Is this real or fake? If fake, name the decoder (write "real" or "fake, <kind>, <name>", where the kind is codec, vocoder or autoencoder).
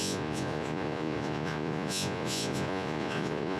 fake, vocoder, Vocos